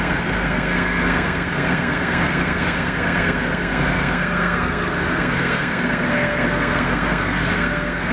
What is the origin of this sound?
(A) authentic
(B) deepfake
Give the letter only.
B